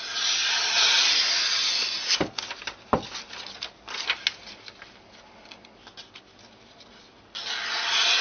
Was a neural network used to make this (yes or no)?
no